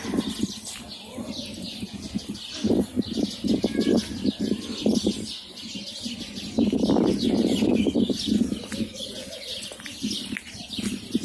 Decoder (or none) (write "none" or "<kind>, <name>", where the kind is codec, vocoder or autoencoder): none